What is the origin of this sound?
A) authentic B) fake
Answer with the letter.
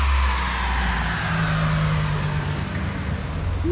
A